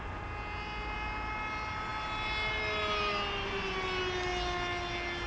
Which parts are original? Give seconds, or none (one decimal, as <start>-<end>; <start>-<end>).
0.0-5.3

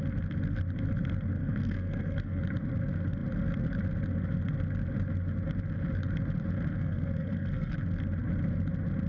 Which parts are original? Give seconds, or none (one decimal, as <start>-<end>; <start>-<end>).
0.0-1.4; 2.4-6.8; 7.7-9.1